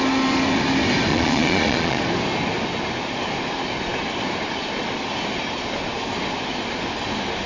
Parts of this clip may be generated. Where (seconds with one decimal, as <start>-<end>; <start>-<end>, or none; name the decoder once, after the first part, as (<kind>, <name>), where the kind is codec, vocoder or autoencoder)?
1.1-2.0 (vocoder, Vocos)